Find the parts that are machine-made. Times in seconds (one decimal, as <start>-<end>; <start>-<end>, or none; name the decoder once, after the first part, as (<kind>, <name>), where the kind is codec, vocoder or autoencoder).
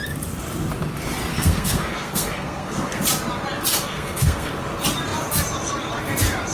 1.3-3.0 (codec, SNAC); 3.7-4.5